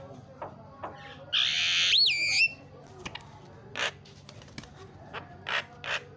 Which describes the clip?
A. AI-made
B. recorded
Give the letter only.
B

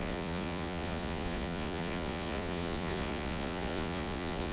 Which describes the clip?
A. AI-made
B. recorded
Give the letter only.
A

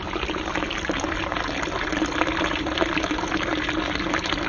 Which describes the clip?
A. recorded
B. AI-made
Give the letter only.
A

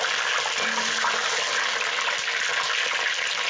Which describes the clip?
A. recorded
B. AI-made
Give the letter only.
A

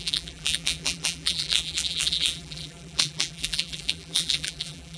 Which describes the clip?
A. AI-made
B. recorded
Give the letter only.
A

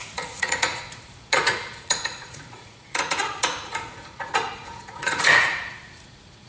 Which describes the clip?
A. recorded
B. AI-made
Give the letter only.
B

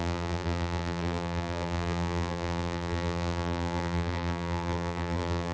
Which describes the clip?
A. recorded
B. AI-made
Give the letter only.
B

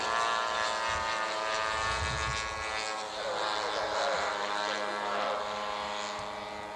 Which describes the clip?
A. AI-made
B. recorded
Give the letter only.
B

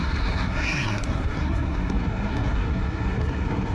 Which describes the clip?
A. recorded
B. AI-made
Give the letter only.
B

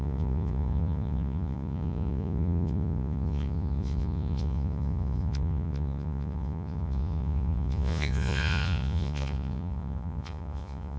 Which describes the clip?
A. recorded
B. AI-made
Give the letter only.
B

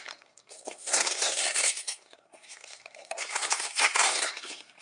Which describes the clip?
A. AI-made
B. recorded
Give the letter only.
A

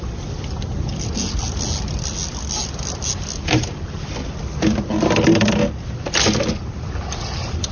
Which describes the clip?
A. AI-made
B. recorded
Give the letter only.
B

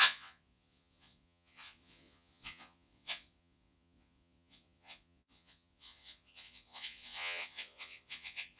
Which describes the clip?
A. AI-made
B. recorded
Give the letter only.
A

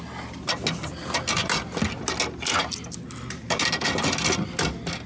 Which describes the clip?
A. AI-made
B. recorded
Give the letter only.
B